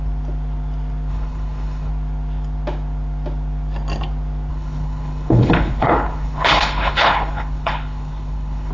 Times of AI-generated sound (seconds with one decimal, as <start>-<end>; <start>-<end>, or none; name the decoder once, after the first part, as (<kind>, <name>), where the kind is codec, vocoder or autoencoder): 1.1-1.9 (codec, HILCodec); 4.5-8.7